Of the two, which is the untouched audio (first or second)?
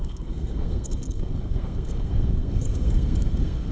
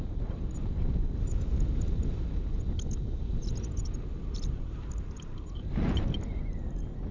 second